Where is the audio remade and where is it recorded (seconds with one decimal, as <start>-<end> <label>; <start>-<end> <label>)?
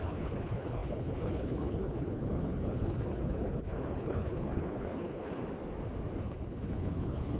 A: 0.0-5.4 remade; 5.4-6.2 recorded; 6.2-7.4 remade